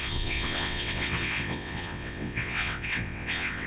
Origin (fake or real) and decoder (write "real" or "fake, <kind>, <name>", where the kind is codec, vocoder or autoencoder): fake, vocoder, WaveNeXt